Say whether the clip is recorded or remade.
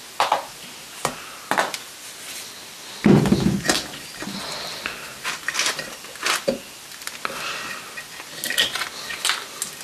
recorded